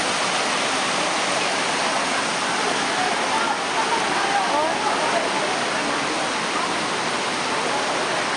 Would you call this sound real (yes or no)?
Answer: yes